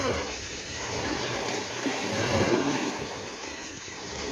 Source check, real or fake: fake